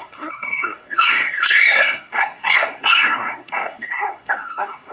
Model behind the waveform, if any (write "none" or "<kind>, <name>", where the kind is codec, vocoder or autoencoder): codec, SNAC